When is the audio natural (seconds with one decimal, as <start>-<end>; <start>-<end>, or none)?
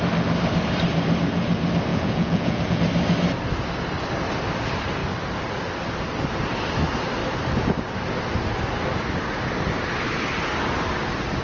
0.0-1.9; 2.8-11.4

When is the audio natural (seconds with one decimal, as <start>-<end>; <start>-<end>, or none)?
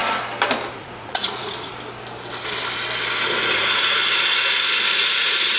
0.0-0.7; 1.7-3.5; 4.0-4.9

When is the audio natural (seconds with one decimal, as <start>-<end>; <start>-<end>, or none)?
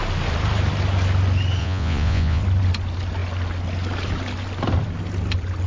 0.0-1.6; 2.4-5.7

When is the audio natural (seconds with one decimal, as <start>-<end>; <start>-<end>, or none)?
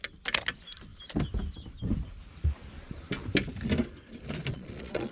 0.0-4.5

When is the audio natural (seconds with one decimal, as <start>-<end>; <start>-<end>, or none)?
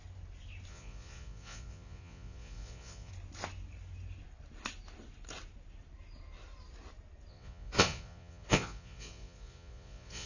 0.0-0.7; 3.1-7.3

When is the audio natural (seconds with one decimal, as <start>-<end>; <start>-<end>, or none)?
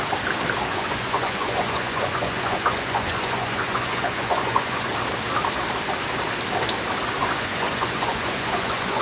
0.0-0.7; 4.9-7.2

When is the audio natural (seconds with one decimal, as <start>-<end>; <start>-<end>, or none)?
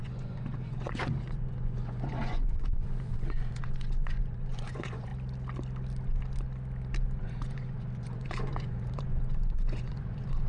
5.1-7.2